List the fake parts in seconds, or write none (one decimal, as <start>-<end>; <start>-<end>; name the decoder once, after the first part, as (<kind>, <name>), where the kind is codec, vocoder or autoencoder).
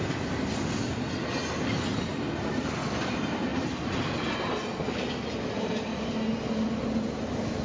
none